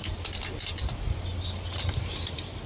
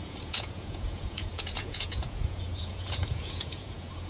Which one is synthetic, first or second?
second